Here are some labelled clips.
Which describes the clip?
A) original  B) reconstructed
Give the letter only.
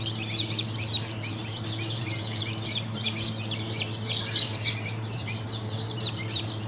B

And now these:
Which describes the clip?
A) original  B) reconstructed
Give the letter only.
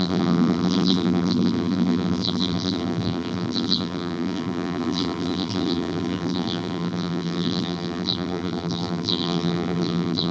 B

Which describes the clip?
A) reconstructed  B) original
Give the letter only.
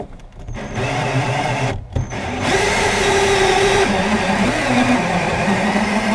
A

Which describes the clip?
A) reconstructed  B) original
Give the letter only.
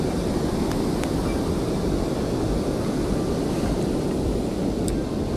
B